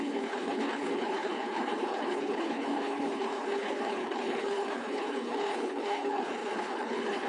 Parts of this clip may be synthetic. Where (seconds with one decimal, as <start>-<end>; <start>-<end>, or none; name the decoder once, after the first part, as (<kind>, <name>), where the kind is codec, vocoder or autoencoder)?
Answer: 0.0-7.3 (codec, HILCodec)